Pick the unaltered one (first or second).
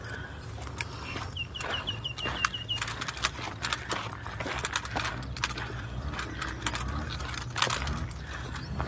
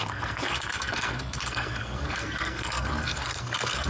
first